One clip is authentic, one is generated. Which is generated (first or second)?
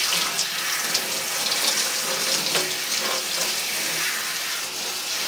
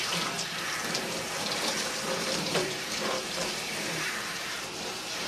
second